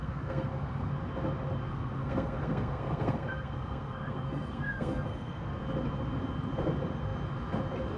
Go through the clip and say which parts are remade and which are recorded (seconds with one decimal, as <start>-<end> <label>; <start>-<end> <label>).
0.0-0.9 remade; 0.9-1.7 recorded; 1.7-5.6 remade; 5.6-8.0 recorded